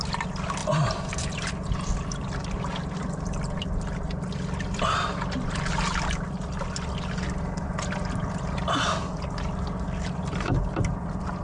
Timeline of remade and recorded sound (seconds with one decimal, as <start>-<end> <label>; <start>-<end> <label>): 0.0-0.6 recorded; 0.6-1.5 remade; 1.5-11.4 recorded